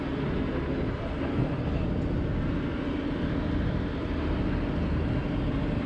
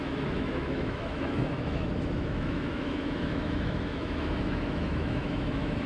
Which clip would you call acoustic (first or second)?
first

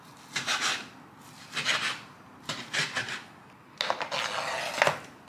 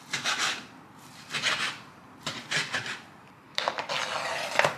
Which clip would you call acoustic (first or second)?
first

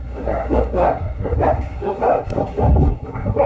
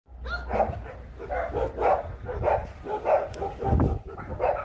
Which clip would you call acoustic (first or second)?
second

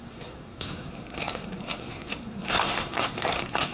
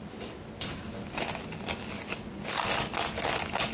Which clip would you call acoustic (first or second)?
second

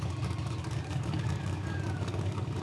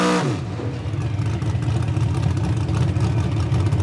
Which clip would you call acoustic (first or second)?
second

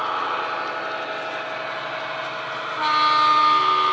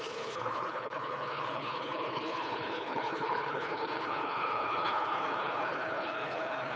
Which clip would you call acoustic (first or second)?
first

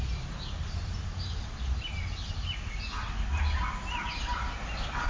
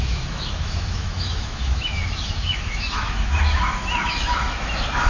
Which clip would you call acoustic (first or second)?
first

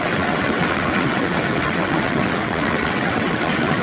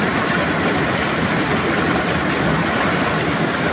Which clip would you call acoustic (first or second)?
second